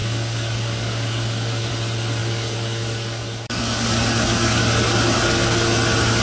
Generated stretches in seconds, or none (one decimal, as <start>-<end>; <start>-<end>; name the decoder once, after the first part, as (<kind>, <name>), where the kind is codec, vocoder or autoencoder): 0.0-1.7 (codec, DAC); 2.2-4.6